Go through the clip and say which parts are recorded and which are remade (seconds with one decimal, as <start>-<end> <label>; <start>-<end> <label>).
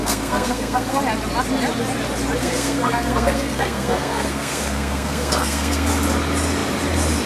0.0-1.0 remade; 1.0-2.4 recorded; 2.4-5.9 remade; 5.9-7.3 recorded